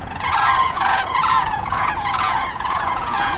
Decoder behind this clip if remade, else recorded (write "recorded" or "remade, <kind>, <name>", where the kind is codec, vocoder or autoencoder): remade, vocoder, Vocos